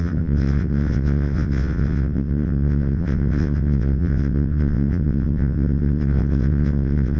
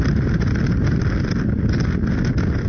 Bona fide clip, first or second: second